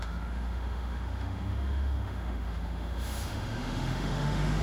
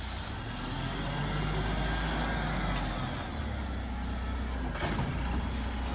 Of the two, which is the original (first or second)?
second